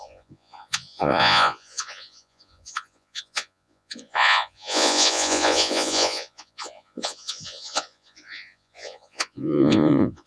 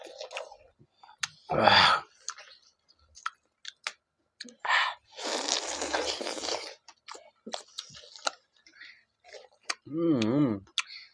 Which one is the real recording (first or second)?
second